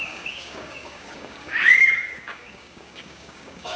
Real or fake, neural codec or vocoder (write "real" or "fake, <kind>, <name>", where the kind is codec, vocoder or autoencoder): fake, codec, DAC